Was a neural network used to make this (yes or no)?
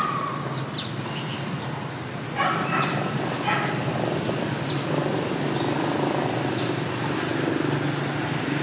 no